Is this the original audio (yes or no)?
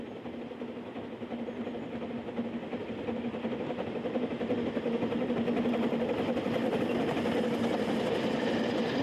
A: yes